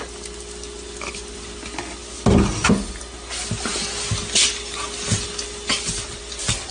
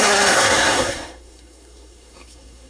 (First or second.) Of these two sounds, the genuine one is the first